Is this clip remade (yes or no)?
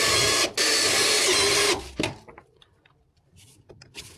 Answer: no